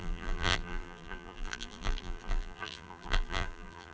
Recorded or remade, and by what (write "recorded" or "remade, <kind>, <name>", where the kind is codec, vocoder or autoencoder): remade, vocoder, BigVGAN v2